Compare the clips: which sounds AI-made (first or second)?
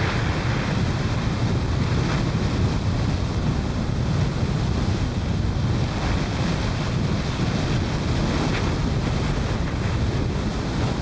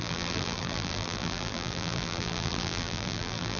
second